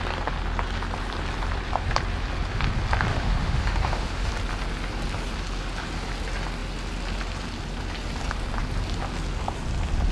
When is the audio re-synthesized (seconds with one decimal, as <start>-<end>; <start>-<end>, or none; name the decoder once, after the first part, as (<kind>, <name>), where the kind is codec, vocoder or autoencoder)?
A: 3.1-4.3 (autoencoder, DAC-VAE)